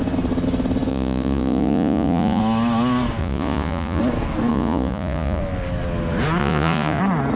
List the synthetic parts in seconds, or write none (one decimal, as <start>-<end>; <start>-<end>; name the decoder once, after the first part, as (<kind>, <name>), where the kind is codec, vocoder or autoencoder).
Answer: 0.9-2.4 (vocoder, Vocos); 3.2-4.0; 4.5-5.4; 6.4-7.0